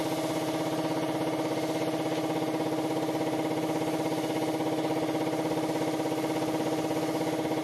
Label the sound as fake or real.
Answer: real